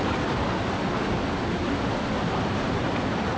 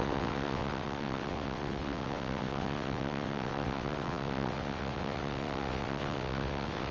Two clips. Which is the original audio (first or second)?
first